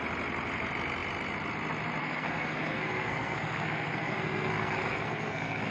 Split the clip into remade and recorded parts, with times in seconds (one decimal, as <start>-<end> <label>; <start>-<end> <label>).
0.0-2.0 recorded; 2.0-5.7 remade